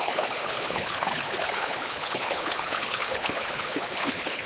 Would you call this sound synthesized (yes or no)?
yes